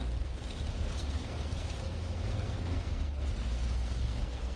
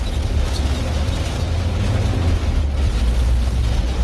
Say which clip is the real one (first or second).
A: second